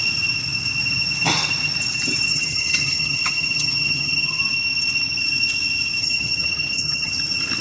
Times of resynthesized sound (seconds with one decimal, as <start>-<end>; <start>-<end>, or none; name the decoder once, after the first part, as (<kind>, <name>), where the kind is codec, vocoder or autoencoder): 2.3-4.4 (vocoder, HiFi-GAN); 6.0-7.1